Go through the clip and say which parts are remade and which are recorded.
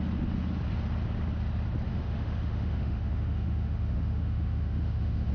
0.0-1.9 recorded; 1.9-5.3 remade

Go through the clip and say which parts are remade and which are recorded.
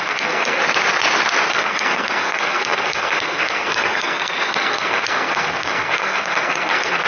0.0-0.6 remade; 0.6-1.5 recorded; 1.5-7.1 remade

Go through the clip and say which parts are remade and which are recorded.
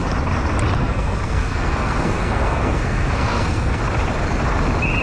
0.0-0.8 recorded; 0.8-3.8 remade; 3.8-5.0 recorded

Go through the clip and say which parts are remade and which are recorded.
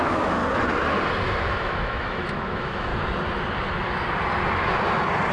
0.0-0.4 remade; 0.4-1.5 recorded; 1.5-2.9 remade; 2.9-5.3 recorded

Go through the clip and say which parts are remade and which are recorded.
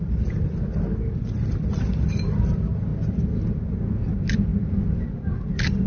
0.0-2.9 remade; 2.9-4.0 recorded; 4.0-5.9 remade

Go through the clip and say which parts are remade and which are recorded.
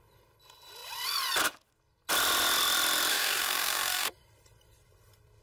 0.0-3.1 recorded; 3.1-4.1 remade; 4.1-5.4 recorded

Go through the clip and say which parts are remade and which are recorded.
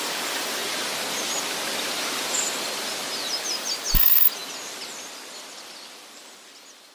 0.0-0.6 remade; 0.6-3.4 recorded; 3.4-4.4 remade; 4.4-5.1 recorded; 5.1-6.9 remade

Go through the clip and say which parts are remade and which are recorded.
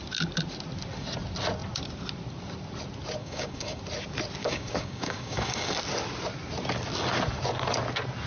0.0-3.2 recorded; 3.2-3.8 remade; 3.8-4.4 recorded; 4.4-5.7 remade; 5.7-8.3 recorded